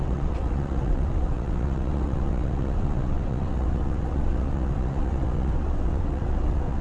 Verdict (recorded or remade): remade